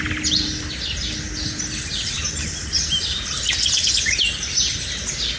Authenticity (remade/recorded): recorded